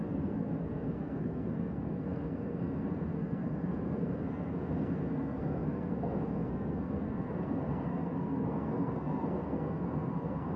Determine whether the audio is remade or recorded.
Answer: remade